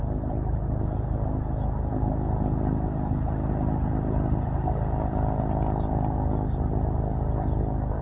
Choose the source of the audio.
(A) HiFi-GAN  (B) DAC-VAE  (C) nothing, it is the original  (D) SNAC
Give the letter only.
C